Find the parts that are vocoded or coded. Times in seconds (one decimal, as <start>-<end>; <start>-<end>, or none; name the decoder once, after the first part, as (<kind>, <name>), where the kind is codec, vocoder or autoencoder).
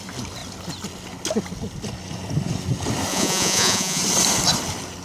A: 3.1-4.0 (vocoder, Vocos)